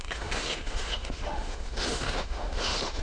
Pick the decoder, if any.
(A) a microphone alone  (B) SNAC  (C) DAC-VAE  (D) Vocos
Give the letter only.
C